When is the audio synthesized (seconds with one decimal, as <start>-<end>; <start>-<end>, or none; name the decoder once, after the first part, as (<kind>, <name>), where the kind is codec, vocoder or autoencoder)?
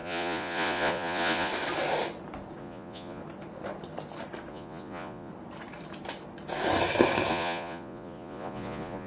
0.0-1.5 (vocoder, Vocos); 2.6-3.2; 4.5-5.3; 7.3-9.1